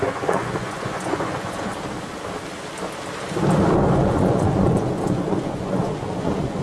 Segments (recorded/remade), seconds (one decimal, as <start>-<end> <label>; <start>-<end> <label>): 0.0-1.7 remade; 1.7-4.0 recorded; 4.0-6.6 remade